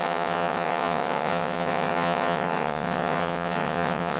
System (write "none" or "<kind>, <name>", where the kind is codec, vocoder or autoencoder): vocoder, WaveNeXt